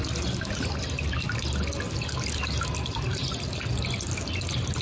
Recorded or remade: recorded